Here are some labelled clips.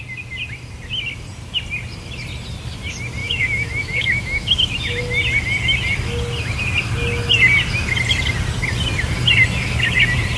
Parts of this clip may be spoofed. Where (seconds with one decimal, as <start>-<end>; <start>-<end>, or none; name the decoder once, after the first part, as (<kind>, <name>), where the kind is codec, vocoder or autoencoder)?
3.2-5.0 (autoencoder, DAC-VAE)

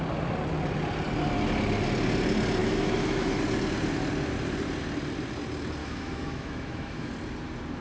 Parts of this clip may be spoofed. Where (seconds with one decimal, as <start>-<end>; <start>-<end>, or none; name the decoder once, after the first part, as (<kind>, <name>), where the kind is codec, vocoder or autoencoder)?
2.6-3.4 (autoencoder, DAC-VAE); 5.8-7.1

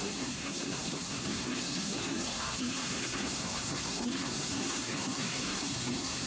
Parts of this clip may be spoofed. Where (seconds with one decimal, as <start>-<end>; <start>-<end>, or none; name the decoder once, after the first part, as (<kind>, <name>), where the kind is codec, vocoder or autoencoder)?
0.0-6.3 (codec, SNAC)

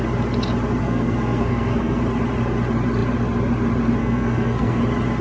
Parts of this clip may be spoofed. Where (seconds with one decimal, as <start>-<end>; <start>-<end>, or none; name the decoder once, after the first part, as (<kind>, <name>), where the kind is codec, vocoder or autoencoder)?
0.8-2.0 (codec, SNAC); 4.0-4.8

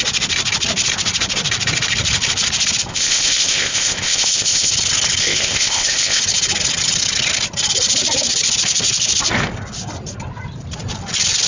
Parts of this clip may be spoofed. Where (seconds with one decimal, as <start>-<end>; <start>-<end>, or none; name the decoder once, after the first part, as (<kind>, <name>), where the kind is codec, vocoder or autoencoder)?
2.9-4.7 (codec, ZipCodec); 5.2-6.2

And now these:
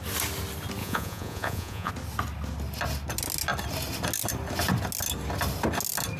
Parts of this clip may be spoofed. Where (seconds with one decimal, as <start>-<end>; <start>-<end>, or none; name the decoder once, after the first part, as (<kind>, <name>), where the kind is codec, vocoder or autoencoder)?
0.8-1.9 (vocoder, Vocos)

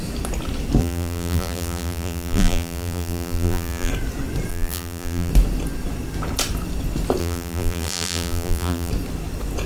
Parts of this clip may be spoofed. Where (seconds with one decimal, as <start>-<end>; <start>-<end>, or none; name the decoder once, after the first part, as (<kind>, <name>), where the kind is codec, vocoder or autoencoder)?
0.8-3.9 (vocoder, BigVGAN v2); 4.5-5.3; 7.2-8.9